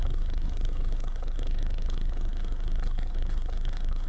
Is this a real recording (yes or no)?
no